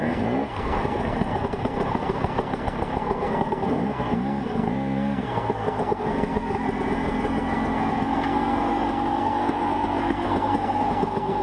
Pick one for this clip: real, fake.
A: fake